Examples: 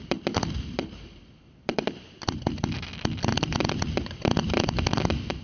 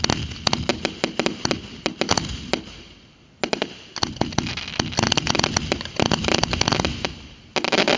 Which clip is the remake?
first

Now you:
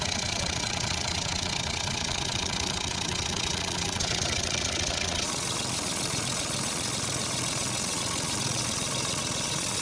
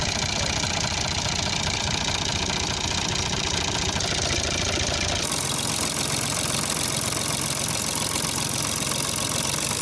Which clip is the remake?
first